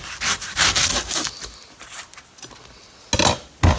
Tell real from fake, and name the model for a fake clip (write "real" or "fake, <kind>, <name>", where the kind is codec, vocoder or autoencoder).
real